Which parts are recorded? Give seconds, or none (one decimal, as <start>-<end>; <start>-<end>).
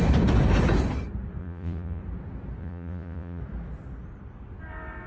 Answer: 0.0-1.4; 2.0-2.6; 3.4-5.1